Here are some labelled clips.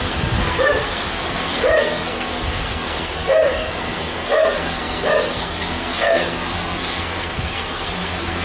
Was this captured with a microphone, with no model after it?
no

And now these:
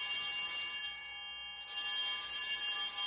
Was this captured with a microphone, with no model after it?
yes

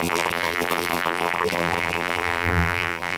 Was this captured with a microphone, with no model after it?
no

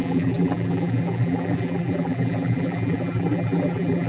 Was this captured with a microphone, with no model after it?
no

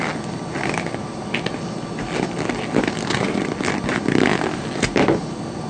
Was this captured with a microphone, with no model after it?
yes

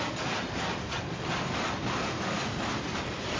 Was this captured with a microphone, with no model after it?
yes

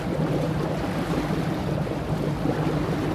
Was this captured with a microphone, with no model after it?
yes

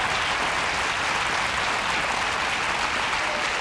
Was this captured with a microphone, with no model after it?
yes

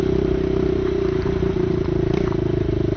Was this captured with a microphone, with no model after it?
no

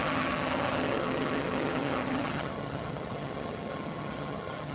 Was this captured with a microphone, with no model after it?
no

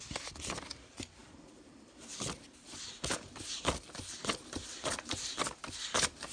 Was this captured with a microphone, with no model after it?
yes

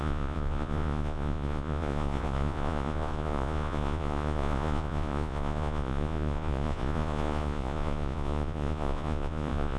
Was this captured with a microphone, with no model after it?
no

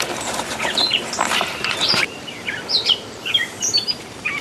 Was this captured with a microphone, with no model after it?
no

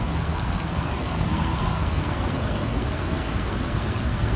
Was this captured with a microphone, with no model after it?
no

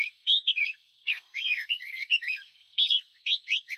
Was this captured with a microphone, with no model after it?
no